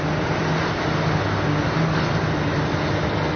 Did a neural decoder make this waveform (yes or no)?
no